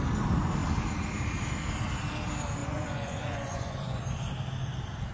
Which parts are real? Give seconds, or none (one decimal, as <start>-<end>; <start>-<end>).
0.0-2.6; 4.0-5.1